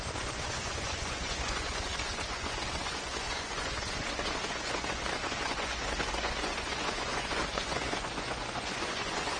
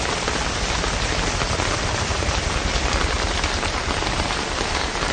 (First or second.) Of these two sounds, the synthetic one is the first